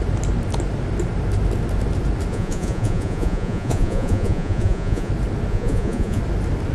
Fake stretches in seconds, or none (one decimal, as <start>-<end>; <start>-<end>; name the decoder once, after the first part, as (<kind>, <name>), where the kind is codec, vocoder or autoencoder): 2.3-5.1 (vocoder, Vocos); 5.5-6.2